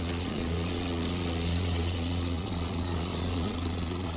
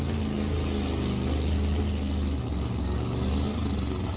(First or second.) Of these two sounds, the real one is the second